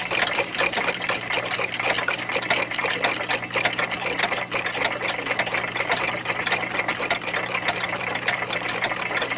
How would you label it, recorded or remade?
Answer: recorded